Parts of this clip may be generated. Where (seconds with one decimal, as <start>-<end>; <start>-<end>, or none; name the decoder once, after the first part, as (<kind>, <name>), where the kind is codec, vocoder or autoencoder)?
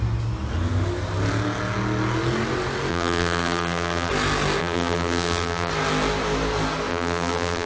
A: 2.9-4.1 (vocoder, BigVGAN v2); 4.6-5.7; 6.9-7.7